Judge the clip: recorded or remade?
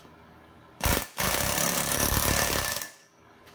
remade